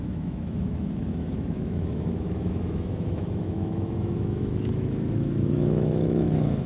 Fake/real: fake